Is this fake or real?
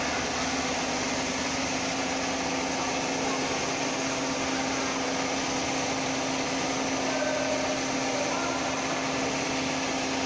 real